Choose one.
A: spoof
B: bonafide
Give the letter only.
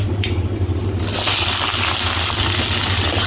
B